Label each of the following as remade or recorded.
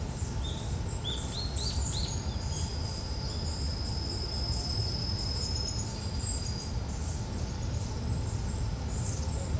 recorded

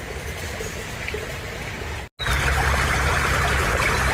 recorded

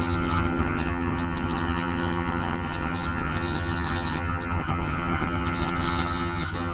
remade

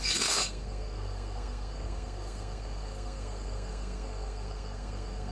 remade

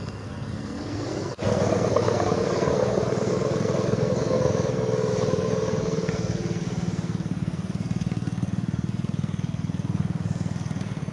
remade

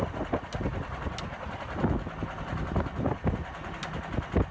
recorded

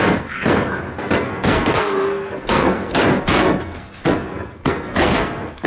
remade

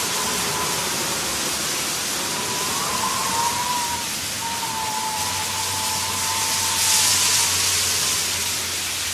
recorded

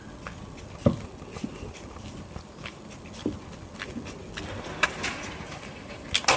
recorded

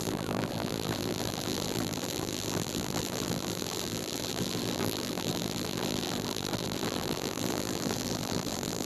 remade